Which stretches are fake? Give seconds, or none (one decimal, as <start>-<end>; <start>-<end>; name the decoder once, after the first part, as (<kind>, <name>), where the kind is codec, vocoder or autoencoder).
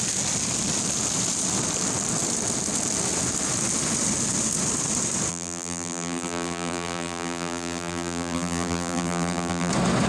5.3-9.7 (vocoder, BigVGAN v2)